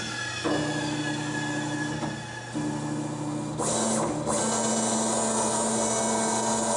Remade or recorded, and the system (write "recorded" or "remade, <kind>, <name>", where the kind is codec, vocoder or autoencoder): recorded